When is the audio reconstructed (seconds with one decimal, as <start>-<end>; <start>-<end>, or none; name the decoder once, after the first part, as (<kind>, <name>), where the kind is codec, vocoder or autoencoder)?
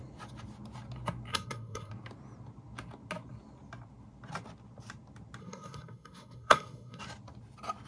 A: 1.3-1.9 (codec, SNAC); 5.4-7.0